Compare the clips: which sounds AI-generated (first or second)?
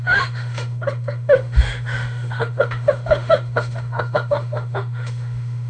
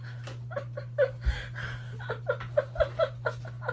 first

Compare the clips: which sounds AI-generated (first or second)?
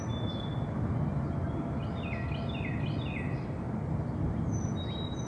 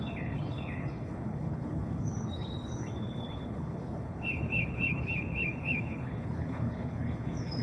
second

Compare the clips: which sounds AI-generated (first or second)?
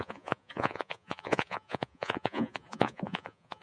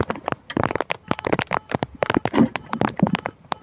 first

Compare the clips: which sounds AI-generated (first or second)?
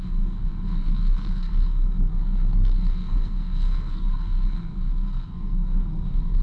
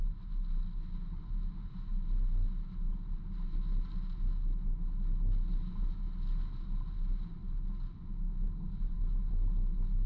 first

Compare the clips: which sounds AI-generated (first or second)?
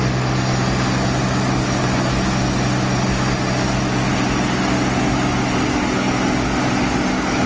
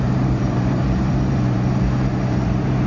second